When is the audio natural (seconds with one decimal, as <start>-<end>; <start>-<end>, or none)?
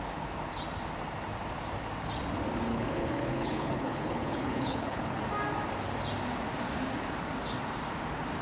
0.0-2.7; 5.2-8.4